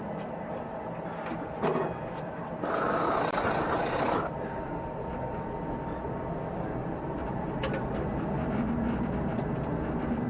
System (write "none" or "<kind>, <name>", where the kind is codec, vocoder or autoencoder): none